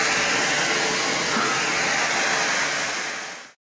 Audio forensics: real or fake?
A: real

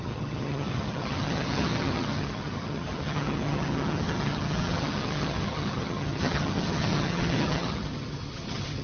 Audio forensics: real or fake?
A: fake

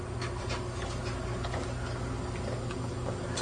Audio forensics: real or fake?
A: real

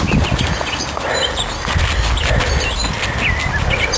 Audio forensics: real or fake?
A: real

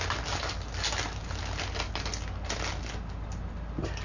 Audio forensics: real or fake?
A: real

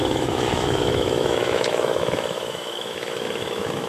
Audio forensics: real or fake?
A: fake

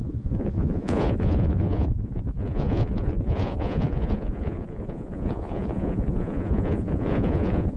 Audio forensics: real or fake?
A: fake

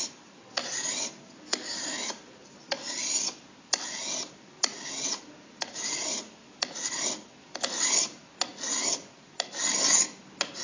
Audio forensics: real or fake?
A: real